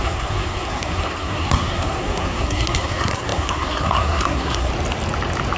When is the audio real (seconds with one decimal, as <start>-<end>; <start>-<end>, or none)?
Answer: 4.7-5.6